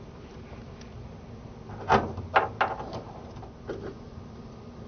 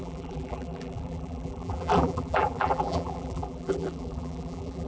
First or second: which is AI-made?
second